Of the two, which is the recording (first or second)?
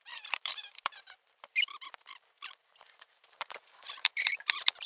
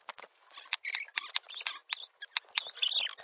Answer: second